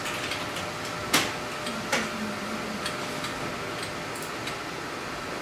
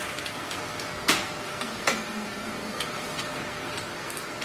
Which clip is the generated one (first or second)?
second